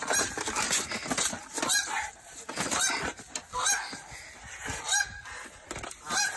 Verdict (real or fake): real